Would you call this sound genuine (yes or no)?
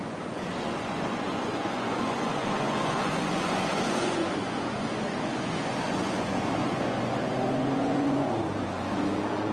no